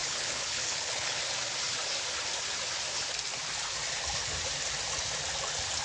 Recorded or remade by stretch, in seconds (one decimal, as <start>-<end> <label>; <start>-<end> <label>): 0.0-1.2 remade; 1.2-5.8 recorded